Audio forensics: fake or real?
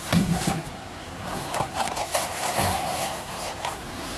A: fake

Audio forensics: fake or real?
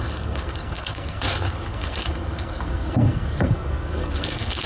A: fake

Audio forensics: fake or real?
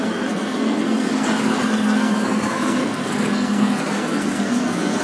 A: fake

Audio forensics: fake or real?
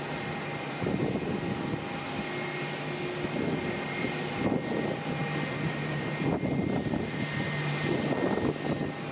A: real